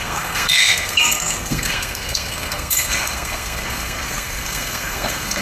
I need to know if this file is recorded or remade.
remade